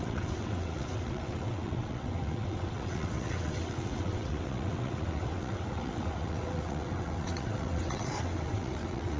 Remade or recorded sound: remade